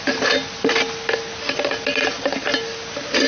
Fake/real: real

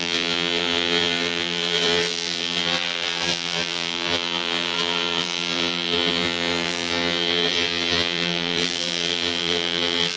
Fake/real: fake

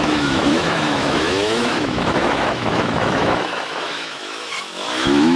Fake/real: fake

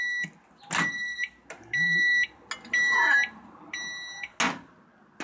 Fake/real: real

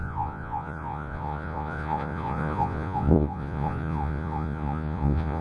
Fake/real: fake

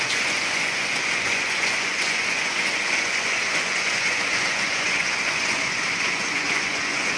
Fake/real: fake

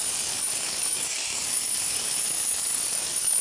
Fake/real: fake